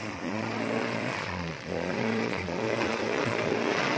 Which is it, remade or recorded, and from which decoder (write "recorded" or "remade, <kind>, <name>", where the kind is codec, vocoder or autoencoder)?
remade, vocoder, Vocos